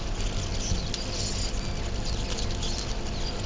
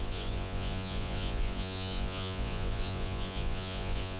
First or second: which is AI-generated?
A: second